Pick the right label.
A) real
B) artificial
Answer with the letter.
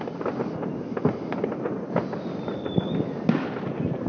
A